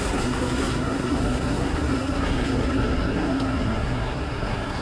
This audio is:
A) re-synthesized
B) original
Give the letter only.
A